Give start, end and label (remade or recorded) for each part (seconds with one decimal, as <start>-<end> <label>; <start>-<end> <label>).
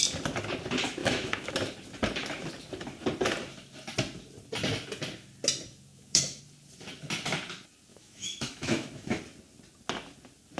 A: 0.0-1.0 recorded; 1.0-1.5 remade; 1.5-5.9 recorded; 5.9-6.4 remade; 6.4-7.9 recorded; 7.9-9.2 remade; 9.2-10.6 recorded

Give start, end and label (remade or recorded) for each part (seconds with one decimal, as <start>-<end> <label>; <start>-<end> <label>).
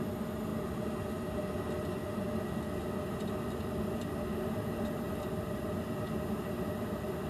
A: 0.0-7.3 recorded